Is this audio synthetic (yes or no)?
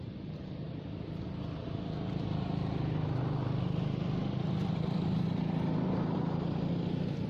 no